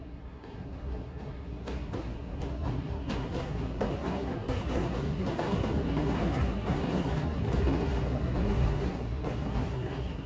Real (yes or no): no